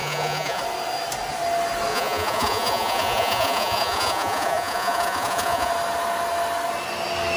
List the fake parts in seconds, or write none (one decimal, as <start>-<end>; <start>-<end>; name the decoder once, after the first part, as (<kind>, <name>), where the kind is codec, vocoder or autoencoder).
0.0-0.6 (vocoder, Vocos); 1.9-5.7